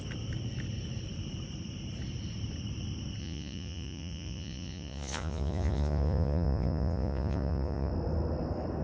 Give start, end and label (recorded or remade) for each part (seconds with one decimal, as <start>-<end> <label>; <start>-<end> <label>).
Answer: 0.0-3.2 recorded; 3.2-7.9 remade; 7.9-8.8 recorded

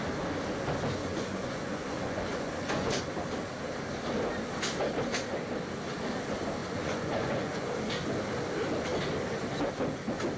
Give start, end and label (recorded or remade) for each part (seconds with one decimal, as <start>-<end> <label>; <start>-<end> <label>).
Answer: 0.0-1.0 recorded; 1.0-3.0 remade; 3.0-6.6 recorded; 6.6-7.7 remade; 7.7-10.4 recorded

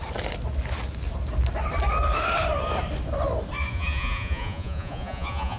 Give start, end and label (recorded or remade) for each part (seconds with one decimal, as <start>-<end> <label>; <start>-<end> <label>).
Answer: 0.0-3.6 recorded; 3.6-5.6 remade